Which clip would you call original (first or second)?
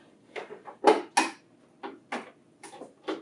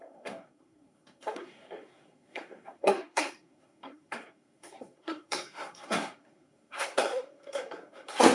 first